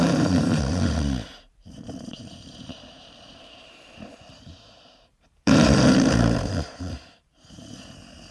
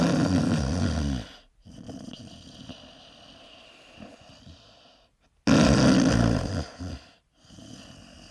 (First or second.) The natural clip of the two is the second